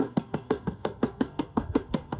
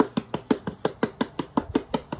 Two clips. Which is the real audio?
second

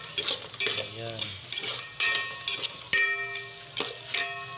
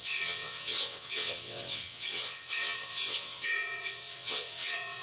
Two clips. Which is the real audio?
first